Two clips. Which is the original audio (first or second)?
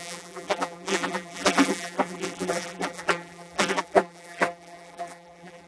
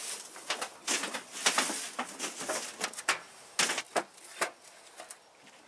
second